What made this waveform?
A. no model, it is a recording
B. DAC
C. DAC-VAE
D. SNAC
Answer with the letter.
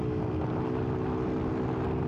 A